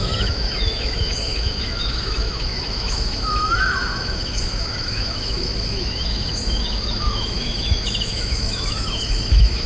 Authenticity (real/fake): fake